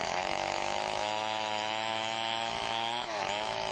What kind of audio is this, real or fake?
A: fake